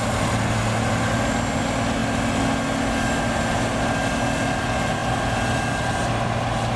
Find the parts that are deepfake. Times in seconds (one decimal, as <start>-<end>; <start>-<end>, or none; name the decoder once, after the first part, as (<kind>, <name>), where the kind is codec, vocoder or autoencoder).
none